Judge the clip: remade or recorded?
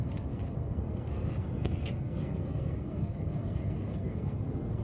remade